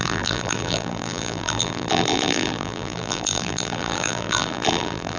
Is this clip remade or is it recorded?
remade